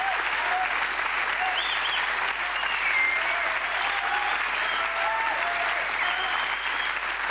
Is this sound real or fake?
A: real